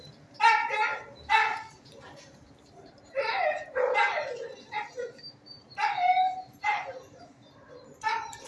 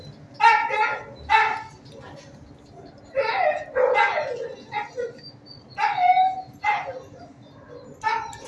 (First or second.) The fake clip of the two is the first